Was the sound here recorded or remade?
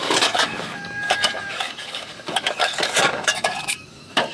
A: remade